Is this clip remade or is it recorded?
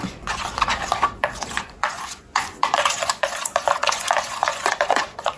remade